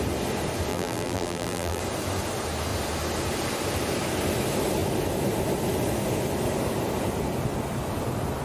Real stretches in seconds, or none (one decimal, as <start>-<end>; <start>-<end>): 0.0-0.7; 1.8-8.4